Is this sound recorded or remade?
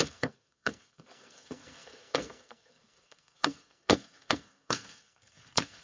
remade